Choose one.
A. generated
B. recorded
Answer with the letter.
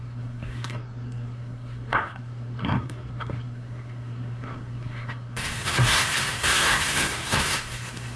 A